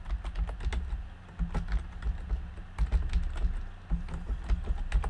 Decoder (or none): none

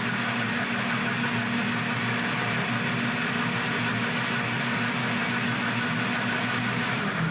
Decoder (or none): none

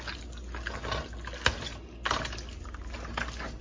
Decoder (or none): none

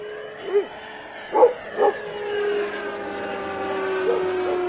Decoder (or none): none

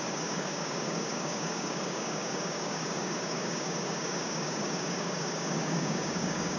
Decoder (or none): codec, DAC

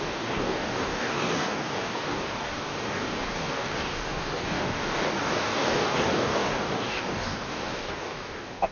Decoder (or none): codec, DAC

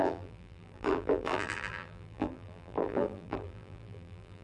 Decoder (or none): vocoder, BigVGAN v2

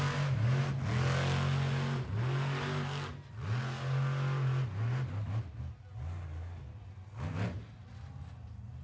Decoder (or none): none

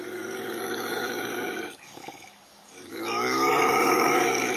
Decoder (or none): codec, DAC